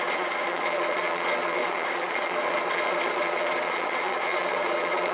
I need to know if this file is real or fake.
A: fake